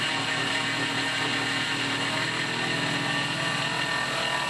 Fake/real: real